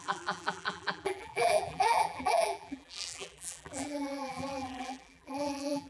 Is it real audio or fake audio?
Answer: fake